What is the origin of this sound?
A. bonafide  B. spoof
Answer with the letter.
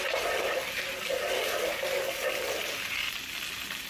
A